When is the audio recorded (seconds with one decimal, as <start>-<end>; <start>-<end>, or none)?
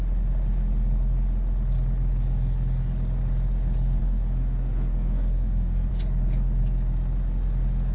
0.0-4.0; 5.9-7.9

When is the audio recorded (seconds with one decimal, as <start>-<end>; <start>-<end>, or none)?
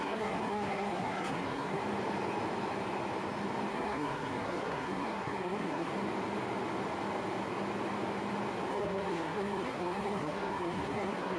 1.8-3.7; 5.9-8.7